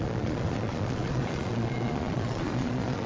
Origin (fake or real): fake